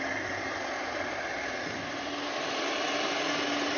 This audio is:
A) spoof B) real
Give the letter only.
B